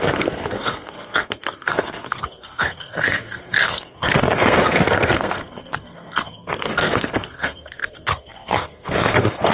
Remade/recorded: remade